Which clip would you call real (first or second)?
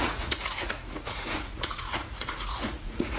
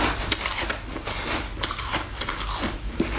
second